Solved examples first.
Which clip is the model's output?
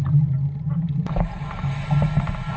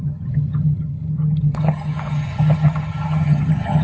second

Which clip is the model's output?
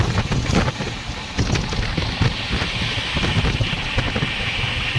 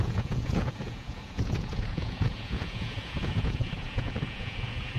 second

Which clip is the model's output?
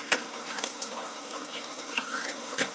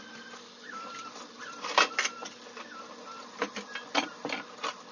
first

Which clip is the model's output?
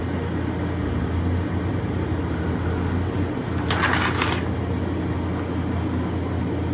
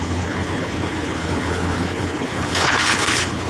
second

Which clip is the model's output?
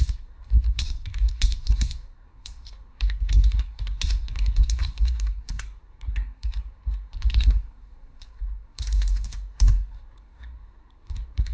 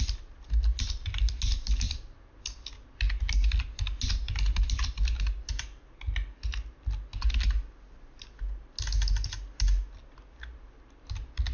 first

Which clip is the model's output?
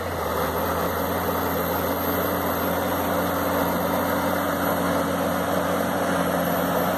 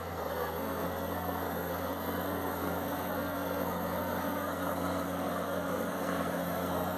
second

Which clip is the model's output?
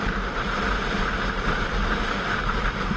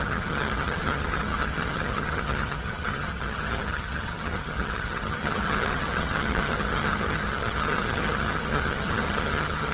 second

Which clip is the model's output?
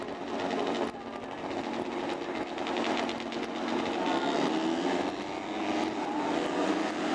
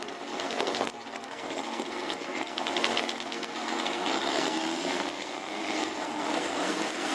second